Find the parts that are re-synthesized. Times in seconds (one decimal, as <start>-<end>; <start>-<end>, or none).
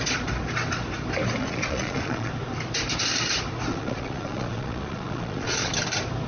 1.4-2.3; 3.7-5.7